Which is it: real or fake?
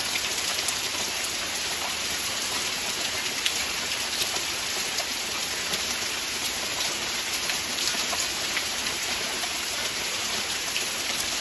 fake